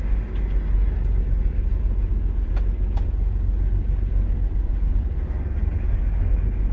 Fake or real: real